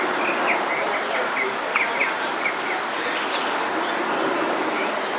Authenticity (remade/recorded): recorded